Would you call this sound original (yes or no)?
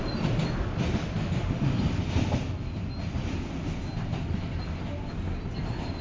yes